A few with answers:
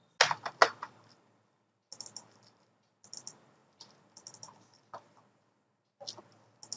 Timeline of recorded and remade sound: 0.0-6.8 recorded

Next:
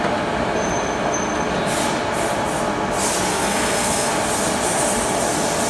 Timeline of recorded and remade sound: 0.0-3.3 recorded; 3.3-4.1 remade; 4.1-5.7 recorded

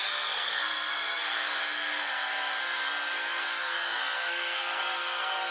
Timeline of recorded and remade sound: 0.0-5.5 remade

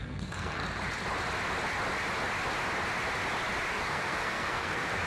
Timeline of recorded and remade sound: 0.0-0.6 remade; 0.6-3.7 recorded; 3.7-5.1 remade

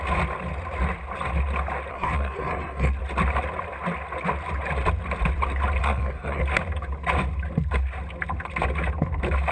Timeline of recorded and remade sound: 0.0-1.9 recorded; 1.9-3.0 remade; 3.0-5.8 recorded; 5.8-6.4 remade; 6.4-9.5 recorded

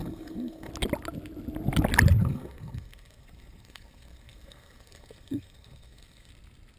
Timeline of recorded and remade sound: 0.0-0.7 remade; 0.7-2.2 recorded; 2.2-6.3 remade; 6.3-6.8 recorded

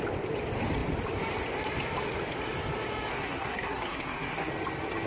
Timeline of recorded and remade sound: 0.0-3.1 recorded; 3.1-4.5 remade; 4.5-5.1 recorded